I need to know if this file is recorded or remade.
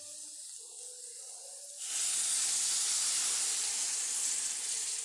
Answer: recorded